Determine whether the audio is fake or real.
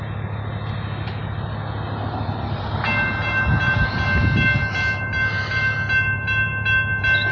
real